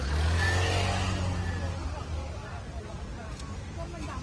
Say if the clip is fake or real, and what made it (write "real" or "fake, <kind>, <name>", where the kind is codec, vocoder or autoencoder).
real